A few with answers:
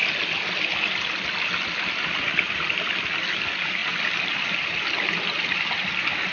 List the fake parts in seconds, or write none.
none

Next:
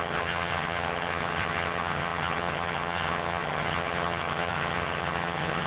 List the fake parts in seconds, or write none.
0.0-5.7 (vocoder, HiFi-GAN)

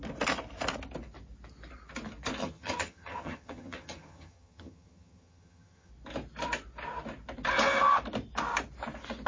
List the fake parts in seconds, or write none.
2.4-5.9 (vocoder, HiFi-GAN)

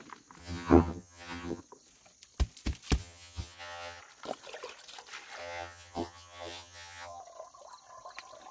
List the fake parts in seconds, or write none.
0.4-1.6 (vocoder, HiFi-GAN); 3.0-4.0; 5.4-7.2